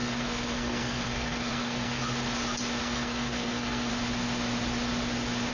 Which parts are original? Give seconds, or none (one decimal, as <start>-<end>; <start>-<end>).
2.0-2.8; 3.9-5.5